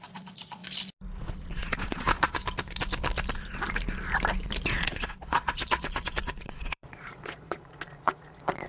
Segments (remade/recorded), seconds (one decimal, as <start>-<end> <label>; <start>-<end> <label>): 0.0-0.6 remade; 0.6-1.3 recorded; 1.3-2.4 remade; 2.4-4.7 recorded; 4.7-8.7 remade